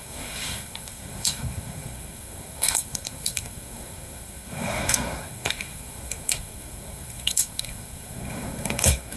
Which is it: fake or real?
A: fake